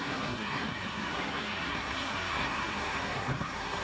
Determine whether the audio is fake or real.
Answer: fake